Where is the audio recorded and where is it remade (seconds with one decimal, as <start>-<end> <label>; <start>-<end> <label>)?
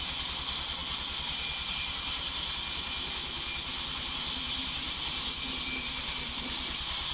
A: 0.0-7.1 recorded